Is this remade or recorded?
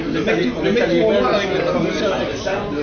recorded